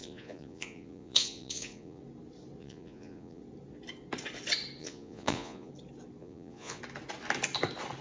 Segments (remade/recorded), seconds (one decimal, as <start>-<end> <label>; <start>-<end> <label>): 0.0-2.0 remade; 2.0-2.6 recorded; 2.6-3.4 remade; 3.4-4.8 recorded; 4.8-5.7 remade; 5.7-6.2 recorded; 6.2-6.8 remade; 6.8-8.0 recorded